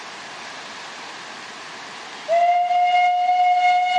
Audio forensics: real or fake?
real